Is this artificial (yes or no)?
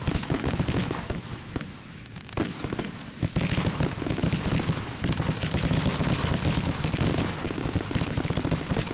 yes